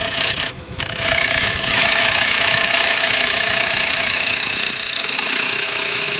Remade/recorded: remade